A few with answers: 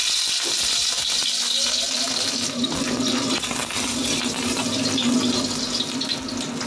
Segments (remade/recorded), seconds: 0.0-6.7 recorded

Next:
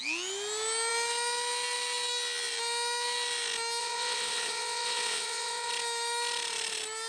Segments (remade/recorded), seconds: 0.0-3.8 recorded; 3.8-5.7 remade; 5.7-7.1 recorded

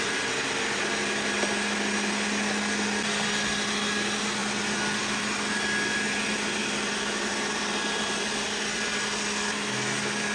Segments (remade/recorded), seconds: 0.0-10.3 recorded

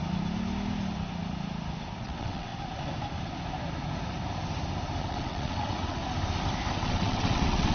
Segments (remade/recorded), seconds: 0.0-2.0 recorded; 2.0-2.5 remade; 2.5-5.0 recorded; 5.0-6.0 remade; 6.0-6.7 recorded; 6.7-7.7 remade

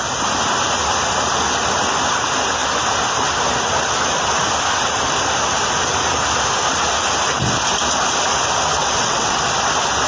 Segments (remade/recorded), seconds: 0.0-8.8 recorded; 8.8-9.4 remade; 9.4-10.1 recorded

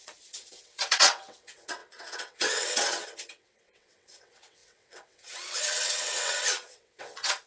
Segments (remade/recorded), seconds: 0.0-7.5 remade